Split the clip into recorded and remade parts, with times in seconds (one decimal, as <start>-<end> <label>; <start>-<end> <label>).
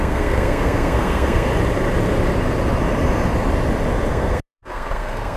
0.0-1.5 remade; 1.5-4.1 recorded; 4.1-5.4 remade